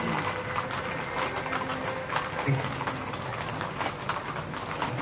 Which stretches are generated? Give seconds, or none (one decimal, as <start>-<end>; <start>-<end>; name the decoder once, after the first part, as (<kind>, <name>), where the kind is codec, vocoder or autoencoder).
none

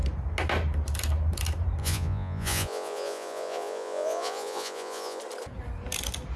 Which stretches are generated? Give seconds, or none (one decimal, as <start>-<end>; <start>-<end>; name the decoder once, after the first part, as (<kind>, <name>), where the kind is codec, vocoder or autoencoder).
1.8-5.2 (vocoder, Vocos)